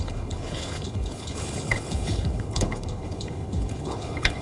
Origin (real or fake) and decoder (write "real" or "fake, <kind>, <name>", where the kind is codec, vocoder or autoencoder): fake, codec, HILCodec